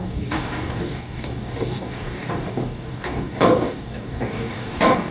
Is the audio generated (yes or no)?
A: yes